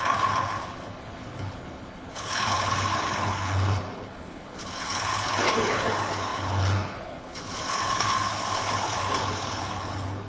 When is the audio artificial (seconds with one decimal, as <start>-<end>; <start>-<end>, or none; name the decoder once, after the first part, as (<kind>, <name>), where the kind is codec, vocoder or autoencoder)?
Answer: 0.0-10.3 (codec, HILCodec)